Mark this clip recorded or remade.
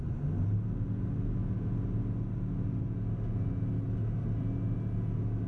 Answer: recorded